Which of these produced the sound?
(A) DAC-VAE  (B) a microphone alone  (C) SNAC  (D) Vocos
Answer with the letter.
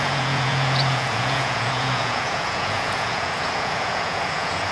D